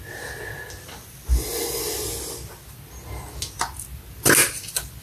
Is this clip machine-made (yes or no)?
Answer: no